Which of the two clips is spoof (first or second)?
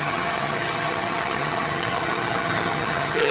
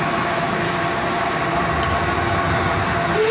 first